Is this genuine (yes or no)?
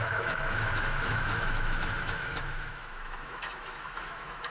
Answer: no